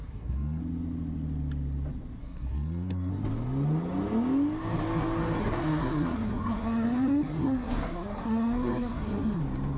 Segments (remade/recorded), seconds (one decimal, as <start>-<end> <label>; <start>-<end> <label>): 0.0-0.6 remade; 0.6-2.2 recorded; 2.2-3.1 remade; 3.1-5.4 recorded; 5.4-9.4 remade; 9.4-9.8 recorded